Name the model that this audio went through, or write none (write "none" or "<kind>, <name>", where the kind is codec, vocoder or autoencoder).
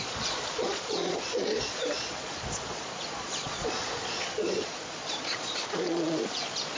vocoder, Vocos